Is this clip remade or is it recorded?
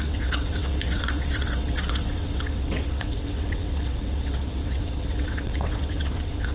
remade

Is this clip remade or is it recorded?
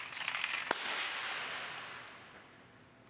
recorded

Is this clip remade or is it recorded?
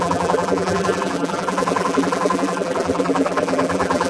remade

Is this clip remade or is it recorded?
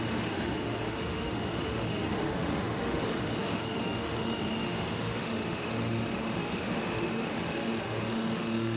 remade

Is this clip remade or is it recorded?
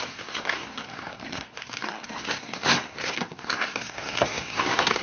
remade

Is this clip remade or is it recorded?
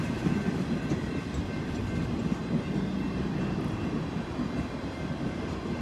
recorded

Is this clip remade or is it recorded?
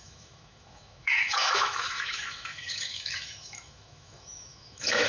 remade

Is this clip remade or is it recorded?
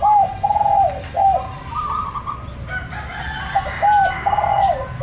recorded